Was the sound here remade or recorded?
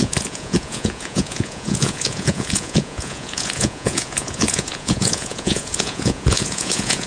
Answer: remade